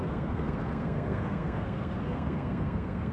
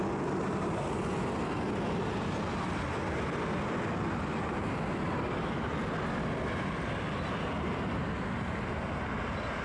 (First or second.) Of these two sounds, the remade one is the first